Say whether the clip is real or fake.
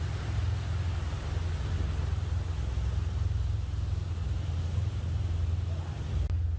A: real